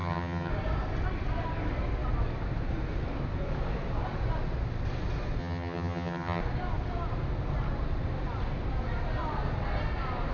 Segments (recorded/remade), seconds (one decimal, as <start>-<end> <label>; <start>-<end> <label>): 0.0-0.5 remade; 0.5-5.4 recorded; 5.4-6.4 remade; 6.4-10.3 recorded